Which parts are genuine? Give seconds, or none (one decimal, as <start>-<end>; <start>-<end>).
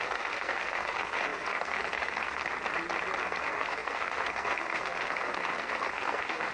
2.5-3.2